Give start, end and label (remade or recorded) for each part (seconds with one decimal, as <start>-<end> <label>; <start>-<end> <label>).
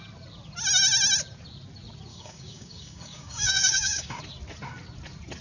0.0-2.1 recorded; 2.1-4.2 remade; 4.2-5.4 recorded